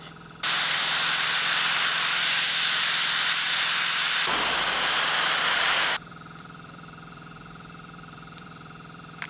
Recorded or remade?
remade